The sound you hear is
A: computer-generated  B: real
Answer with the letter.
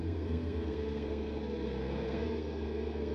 A